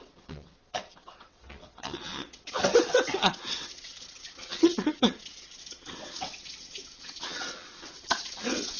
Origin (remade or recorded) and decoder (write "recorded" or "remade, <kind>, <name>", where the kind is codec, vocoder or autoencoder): remade, vocoder, WaveNeXt